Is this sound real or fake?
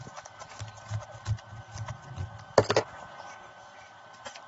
real